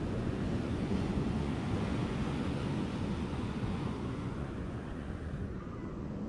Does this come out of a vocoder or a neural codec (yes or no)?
yes